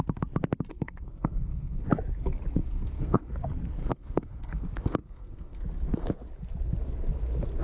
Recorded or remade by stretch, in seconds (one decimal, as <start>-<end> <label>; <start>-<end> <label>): 0.0-0.7 recorded; 0.7-1.8 remade; 1.8-2.6 recorded; 2.6-3.3 remade; 3.3-3.8 recorded; 3.8-4.6 remade; 4.6-5.0 recorded; 5.0-5.6 remade; 5.6-7.6 recorded